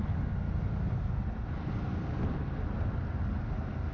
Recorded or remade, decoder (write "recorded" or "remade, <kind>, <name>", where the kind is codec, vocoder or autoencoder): recorded